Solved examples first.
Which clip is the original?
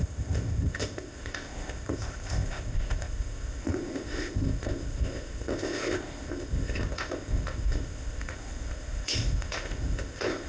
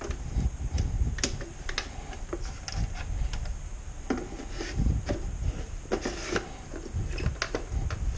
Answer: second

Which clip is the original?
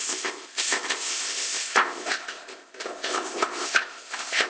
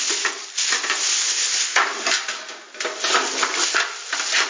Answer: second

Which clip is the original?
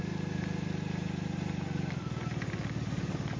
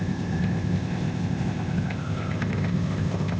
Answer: first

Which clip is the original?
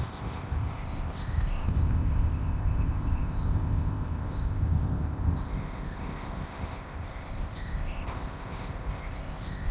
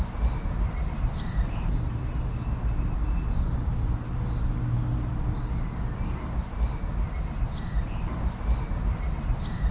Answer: second